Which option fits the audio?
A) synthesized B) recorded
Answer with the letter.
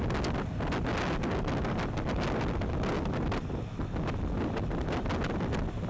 B